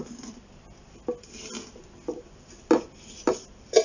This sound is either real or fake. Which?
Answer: real